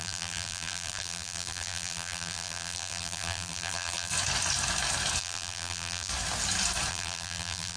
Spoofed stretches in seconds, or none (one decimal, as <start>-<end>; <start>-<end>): 0.0-4.1; 5.2-6.1; 6.9-7.8